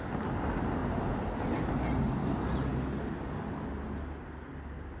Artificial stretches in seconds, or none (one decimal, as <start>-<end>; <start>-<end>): none